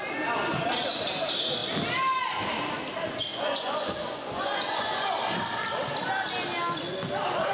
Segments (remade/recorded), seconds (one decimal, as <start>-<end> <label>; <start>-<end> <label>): 0.0-3.3 recorded; 3.3-5.2 remade; 5.2-7.5 recorded